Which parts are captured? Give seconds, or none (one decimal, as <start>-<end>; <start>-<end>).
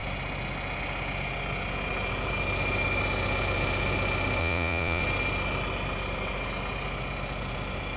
0.0-4.4; 5.0-8.0